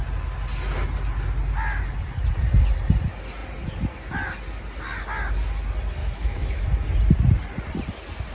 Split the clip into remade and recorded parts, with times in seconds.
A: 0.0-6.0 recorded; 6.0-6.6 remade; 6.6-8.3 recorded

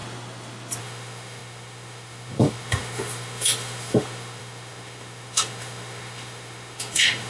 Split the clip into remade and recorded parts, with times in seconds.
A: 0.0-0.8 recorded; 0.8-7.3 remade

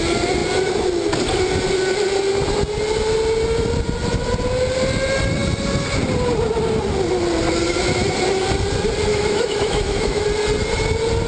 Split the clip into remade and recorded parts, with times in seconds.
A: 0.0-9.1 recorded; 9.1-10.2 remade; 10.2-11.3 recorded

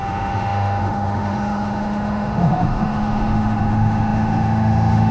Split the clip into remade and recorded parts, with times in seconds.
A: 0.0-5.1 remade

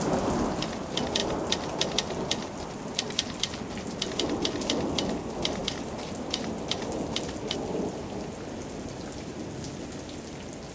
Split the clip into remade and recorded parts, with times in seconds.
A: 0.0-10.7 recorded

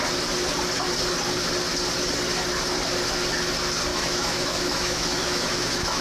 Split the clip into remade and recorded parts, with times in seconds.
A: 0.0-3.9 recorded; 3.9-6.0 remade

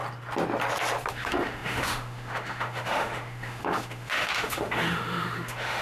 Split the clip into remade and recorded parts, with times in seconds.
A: 0.0-1.1 recorded; 1.1-5.8 remade

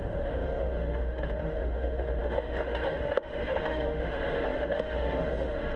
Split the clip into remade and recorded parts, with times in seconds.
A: 0.0-5.8 remade